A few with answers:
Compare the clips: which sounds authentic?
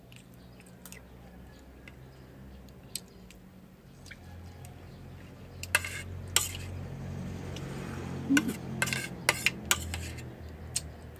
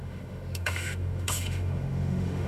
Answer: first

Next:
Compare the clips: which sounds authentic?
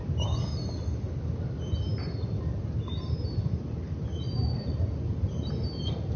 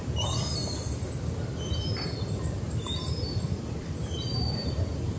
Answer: first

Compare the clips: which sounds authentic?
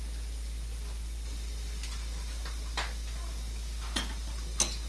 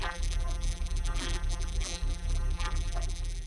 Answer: first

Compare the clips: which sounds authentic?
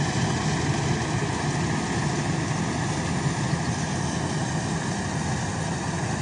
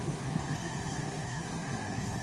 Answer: first